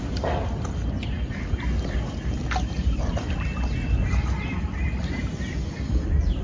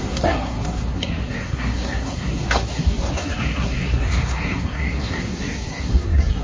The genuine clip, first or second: first